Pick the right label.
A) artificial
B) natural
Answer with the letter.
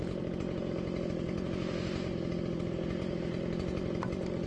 B